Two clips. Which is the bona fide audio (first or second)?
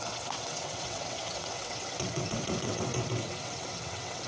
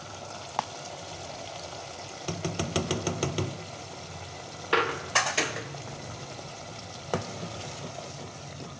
second